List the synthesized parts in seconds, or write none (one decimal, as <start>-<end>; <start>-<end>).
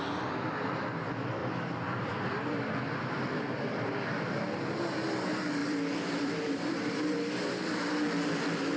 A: 1.4-4.3; 5.6-7.5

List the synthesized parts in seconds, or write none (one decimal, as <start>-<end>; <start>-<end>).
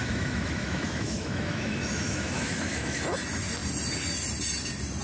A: 0.0-3.0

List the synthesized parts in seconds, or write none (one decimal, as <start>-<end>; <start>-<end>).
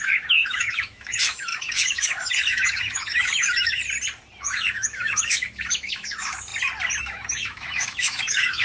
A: 0.0-3.8; 4.4-6.5; 7.0-8.6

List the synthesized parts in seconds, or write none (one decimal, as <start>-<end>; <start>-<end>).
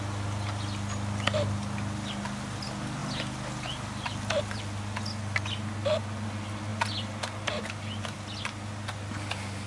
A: none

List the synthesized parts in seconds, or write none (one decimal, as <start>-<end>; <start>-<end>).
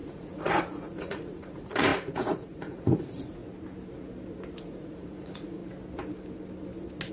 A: 0.0-3.4; 4.6-5.6